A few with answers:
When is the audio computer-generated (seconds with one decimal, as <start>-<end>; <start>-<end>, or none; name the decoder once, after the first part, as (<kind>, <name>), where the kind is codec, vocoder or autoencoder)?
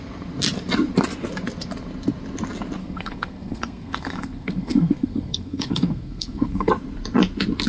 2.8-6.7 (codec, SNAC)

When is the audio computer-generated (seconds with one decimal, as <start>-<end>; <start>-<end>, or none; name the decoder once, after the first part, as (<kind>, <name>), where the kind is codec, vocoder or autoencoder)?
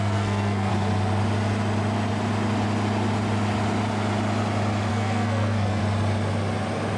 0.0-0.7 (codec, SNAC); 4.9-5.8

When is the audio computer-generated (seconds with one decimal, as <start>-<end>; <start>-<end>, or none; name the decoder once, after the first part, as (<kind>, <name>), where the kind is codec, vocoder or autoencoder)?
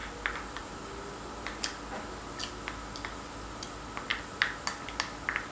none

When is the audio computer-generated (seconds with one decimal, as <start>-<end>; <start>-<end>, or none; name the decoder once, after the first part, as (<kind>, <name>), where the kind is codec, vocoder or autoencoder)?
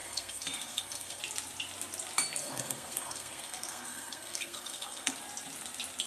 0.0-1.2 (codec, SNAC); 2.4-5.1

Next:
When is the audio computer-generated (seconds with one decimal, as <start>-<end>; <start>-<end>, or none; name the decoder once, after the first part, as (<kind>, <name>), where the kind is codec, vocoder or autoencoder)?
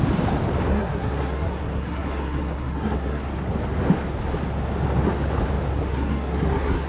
0.7-3.2 (codec, SNAC); 5.9-6.9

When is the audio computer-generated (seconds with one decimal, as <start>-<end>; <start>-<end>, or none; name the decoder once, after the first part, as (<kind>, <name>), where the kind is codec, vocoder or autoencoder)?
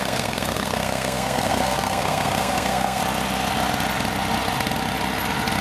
0.0-3.0 (codec, SNAC)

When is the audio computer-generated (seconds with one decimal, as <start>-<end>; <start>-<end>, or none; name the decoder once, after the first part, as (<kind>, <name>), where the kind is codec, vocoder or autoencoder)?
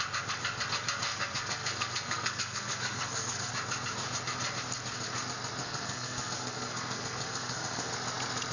1.1-3.5 (codec, SNAC); 5.6-7.9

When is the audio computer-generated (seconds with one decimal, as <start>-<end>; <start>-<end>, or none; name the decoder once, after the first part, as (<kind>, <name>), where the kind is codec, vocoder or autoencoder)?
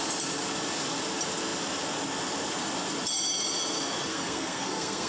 4.1-5.1 (codec, SNAC)